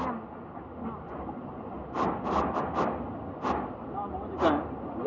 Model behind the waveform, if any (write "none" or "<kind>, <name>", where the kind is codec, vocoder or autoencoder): none